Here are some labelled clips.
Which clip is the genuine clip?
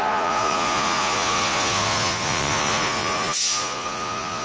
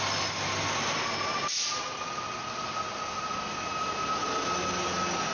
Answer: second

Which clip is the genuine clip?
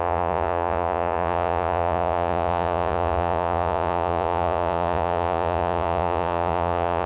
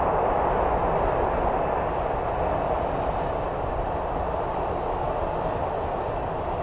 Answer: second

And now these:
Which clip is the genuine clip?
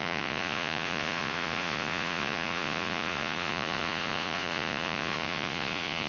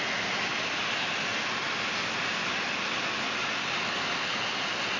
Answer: second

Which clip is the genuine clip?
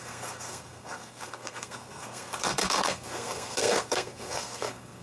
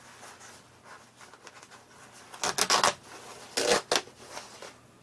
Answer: second